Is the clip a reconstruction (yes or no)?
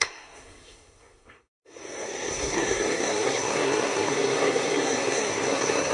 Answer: yes